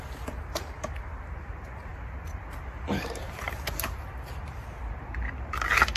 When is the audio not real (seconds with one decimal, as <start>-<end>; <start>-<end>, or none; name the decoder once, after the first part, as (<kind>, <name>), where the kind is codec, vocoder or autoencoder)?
none

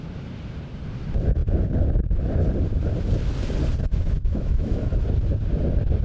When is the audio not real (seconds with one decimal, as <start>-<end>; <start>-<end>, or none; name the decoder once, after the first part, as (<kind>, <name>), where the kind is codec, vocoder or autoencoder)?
3.9-4.9 (autoencoder, DAC-VAE)

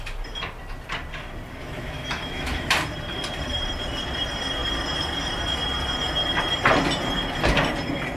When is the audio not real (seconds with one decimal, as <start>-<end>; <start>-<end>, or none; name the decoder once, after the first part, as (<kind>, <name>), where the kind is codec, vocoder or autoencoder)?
1.6-2.7 (autoencoder, DAC-VAE)

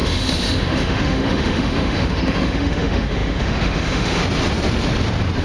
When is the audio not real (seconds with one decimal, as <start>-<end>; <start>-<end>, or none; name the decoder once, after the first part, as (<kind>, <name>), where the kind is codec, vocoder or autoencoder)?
0.0-4.2 (autoencoder, DAC-VAE)

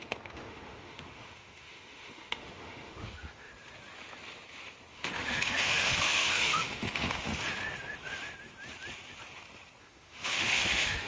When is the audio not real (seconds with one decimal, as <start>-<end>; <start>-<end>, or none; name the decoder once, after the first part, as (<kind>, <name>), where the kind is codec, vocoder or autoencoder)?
0.0-3.5 (autoencoder, DAC-VAE); 4.9-7.3; 9.8-11.1